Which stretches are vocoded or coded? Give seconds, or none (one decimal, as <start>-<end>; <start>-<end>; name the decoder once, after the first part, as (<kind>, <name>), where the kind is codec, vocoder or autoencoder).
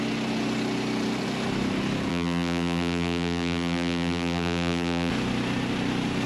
2.1-5.1 (vocoder, BigVGAN v2)